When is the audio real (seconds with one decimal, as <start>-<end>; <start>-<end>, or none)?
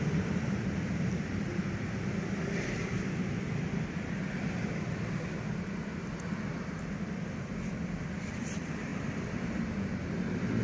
none